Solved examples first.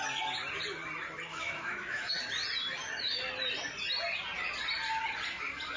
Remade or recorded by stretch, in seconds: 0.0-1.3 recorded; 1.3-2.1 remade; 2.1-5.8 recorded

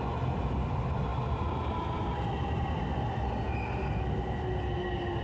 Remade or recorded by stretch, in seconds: 0.0-5.2 recorded

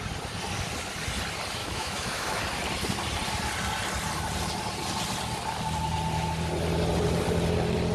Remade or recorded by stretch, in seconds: 0.0-1.6 recorded; 1.6-2.4 remade; 2.4-7.9 recorded

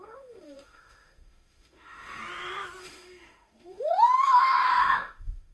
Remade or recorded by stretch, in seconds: 0.0-2.2 remade; 2.2-2.8 recorded; 2.8-5.5 remade

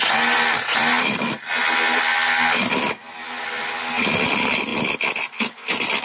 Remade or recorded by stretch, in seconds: 0.0-6.0 recorded

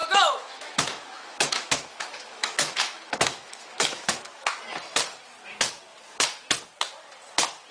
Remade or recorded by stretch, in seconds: 0.0-4.6 remade; 4.6-7.7 recorded